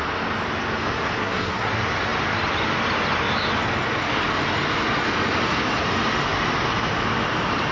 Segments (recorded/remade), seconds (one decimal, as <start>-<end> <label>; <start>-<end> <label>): 0.0-1.2 recorded; 1.2-1.7 remade; 1.7-7.7 recorded